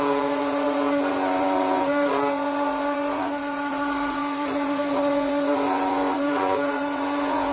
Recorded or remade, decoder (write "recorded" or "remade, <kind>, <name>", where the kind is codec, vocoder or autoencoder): remade, vocoder, Vocos